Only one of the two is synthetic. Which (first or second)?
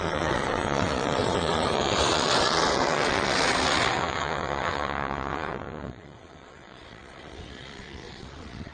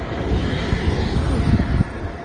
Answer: first